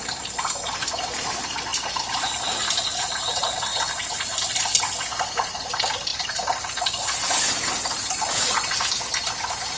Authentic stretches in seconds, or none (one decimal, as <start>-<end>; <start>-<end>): 0.0-1.7; 2.6-3.7; 4.2-6.1; 8.3-9.8